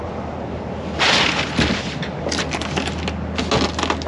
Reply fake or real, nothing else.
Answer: real